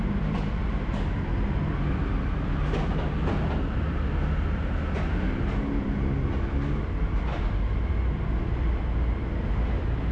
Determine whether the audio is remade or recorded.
recorded